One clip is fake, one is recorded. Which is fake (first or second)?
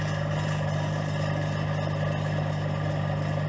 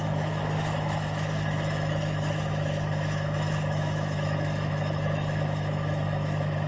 second